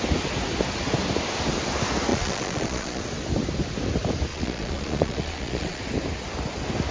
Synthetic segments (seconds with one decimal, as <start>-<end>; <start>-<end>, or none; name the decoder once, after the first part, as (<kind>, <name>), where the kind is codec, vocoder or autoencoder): 2.1-3.0 (vocoder, Vocos); 4.3-5.8